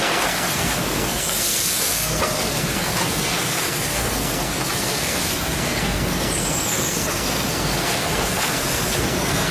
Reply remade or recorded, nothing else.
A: remade